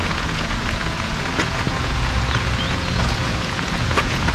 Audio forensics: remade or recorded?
remade